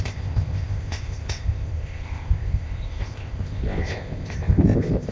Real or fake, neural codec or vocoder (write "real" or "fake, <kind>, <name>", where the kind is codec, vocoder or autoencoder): fake, codec, ZipCodec